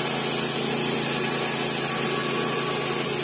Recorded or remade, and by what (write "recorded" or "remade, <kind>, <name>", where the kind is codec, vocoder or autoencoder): recorded